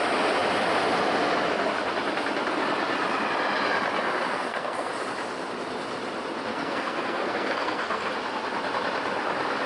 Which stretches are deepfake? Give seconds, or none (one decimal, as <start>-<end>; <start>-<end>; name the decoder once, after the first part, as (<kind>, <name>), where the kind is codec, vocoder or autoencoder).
4.3-4.9 (codec, SNAC); 6.5-8.1